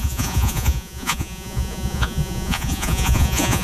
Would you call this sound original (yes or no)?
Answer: no